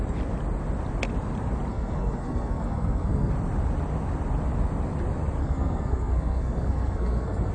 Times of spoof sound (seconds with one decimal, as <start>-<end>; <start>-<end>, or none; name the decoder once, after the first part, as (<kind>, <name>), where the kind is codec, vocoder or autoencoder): 1.7-3.3 (codec, SNAC); 5.4-7.5